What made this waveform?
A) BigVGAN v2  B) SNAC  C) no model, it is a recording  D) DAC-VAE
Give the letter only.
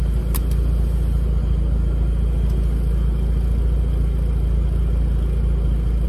C